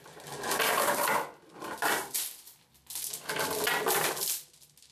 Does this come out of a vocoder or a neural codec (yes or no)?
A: no